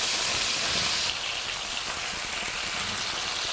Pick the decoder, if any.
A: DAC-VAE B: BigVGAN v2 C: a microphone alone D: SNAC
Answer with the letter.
C